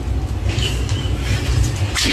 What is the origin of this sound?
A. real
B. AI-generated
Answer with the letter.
A